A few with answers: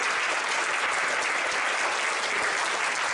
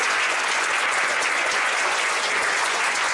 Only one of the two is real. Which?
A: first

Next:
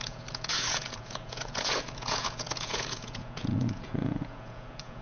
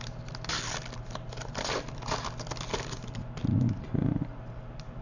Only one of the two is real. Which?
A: second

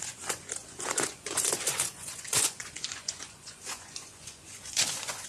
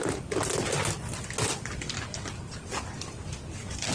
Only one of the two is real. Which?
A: second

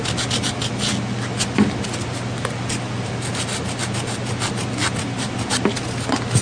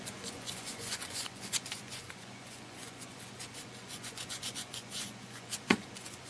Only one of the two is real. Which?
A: first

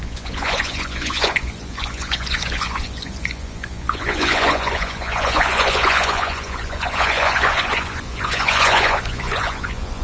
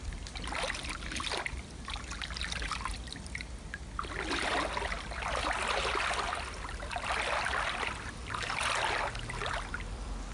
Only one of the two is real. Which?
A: second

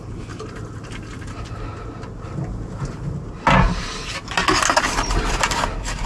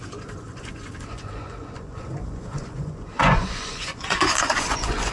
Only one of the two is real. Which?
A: first